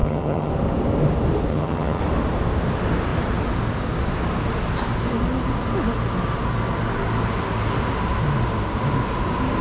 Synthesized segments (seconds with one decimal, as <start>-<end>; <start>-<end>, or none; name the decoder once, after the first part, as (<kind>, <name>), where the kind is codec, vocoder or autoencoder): 0.0-0.5 (vocoder, HiFi-GAN); 1.5-2.0